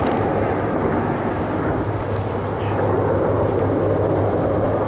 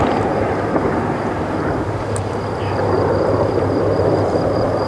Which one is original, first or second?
first